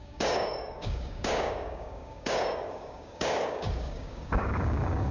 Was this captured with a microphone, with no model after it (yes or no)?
no